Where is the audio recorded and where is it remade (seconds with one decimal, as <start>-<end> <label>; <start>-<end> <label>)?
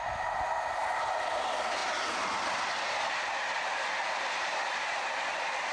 0.0-5.7 recorded